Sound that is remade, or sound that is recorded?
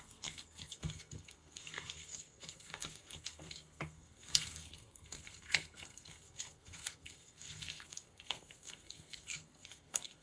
remade